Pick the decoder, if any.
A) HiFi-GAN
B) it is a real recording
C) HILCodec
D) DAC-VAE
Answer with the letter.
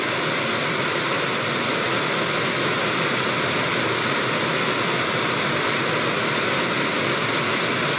B